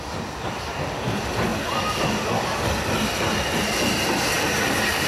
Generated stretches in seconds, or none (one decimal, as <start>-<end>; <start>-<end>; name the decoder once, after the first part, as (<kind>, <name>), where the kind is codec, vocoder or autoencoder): none